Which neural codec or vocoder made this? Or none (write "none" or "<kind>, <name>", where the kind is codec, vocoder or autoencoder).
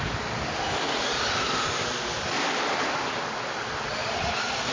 none